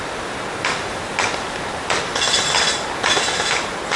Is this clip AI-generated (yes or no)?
no